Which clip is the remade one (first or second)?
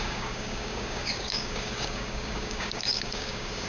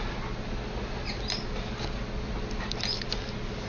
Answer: first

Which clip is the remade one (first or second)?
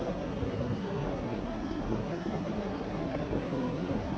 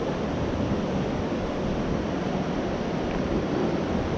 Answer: first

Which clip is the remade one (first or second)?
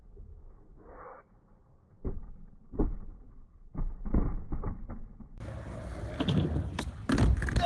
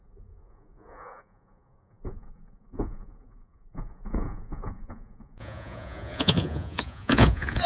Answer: second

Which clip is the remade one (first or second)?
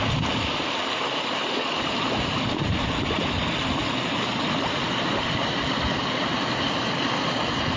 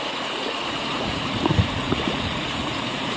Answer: second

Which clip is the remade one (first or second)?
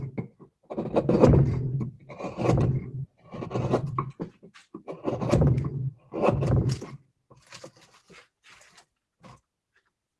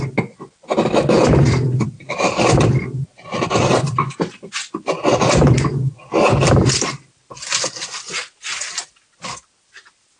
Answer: second